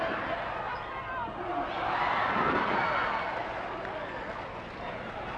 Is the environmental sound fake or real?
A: real